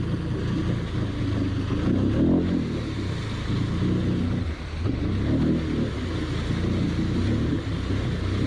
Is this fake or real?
real